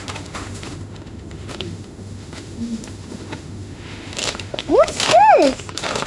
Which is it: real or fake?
fake